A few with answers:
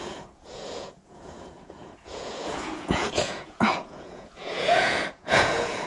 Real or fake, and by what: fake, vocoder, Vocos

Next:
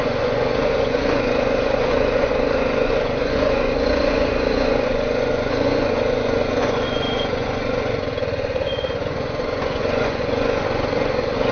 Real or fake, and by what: fake, vocoder, Vocos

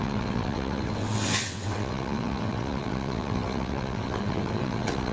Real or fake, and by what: fake, vocoder, WaveNeXt